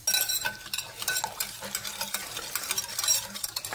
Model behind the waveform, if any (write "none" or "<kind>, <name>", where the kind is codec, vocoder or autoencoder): none